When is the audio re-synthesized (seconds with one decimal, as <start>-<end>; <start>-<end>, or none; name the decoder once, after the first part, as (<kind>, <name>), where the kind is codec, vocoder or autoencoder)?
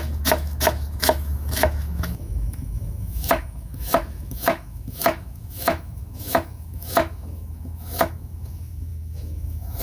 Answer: 0.0-9.8 (autoencoder, DAC-VAE)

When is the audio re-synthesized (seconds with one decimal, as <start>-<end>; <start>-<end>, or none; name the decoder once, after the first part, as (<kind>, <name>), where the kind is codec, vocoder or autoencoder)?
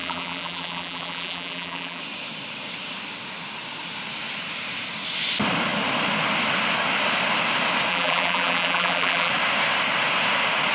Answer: 0.0-2.0 (vocoder, BigVGAN v2); 7.9-9.3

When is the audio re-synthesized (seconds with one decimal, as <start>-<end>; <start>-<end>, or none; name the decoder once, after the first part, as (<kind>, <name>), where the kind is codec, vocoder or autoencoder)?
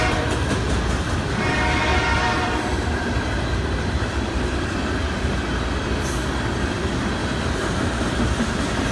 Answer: 1.9-4.8 (vocoder, BigVGAN v2); 7.2-8.9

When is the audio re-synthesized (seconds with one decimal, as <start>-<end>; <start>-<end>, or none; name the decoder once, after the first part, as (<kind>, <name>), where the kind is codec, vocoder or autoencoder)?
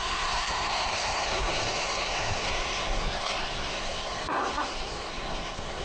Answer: 0.0-5.8 (codec, SNAC)